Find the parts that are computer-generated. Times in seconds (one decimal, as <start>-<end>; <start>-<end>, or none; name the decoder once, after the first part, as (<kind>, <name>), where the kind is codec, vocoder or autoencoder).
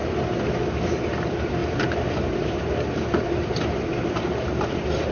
1.6-5.1 (vocoder, BigVGAN v2)